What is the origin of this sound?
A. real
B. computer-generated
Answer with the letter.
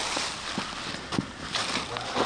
A